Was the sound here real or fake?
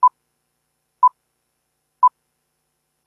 real